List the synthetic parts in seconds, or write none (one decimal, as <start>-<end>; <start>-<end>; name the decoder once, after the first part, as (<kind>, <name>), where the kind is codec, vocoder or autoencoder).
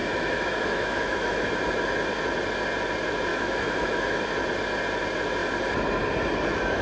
0.0-1.5 (autoencoder, DAC-VAE); 3.3-4.2